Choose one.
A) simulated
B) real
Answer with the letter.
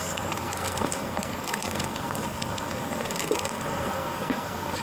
A